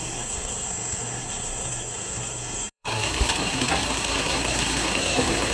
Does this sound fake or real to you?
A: fake